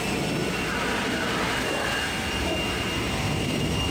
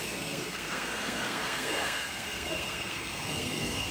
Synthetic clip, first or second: second